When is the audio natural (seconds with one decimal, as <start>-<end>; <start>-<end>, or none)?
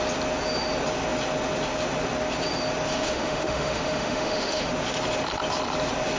0.0-2.9; 4.7-6.2